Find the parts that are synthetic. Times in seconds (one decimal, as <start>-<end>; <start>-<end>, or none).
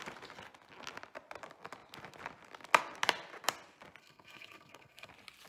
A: 4.0-5.1